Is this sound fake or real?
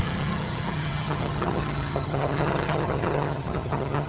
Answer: fake